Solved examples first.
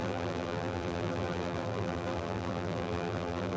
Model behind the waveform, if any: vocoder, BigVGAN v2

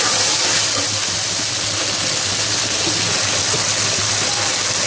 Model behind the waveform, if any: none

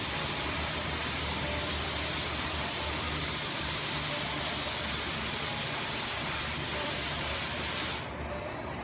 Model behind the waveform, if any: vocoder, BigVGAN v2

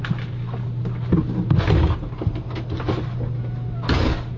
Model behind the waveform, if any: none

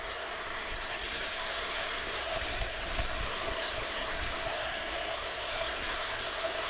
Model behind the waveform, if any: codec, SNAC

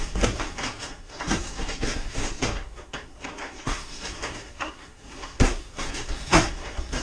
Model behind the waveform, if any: codec, SNAC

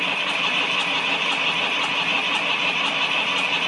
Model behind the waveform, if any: none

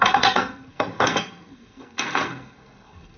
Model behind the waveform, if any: codec, SNAC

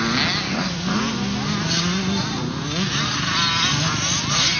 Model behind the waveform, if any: none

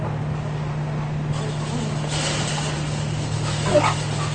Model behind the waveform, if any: none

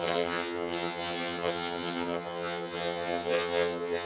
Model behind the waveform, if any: vocoder, HiFi-GAN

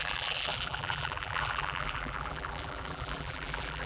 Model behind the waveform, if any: vocoder, BigVGAN v2